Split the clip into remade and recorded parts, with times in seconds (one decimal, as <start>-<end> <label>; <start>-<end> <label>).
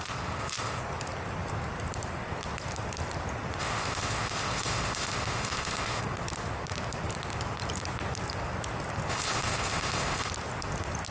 0.0-0.8 remade; 0.8-3.6 recorded; 3.6-6.0 remade; 6.0-9.1 recorded; 9.1-10.3 remade; 10.3-11.1 recorded